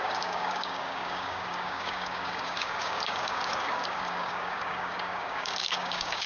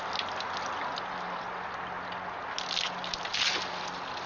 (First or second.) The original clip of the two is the second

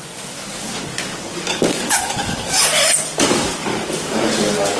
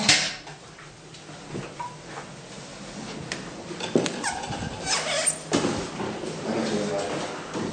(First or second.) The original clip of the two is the second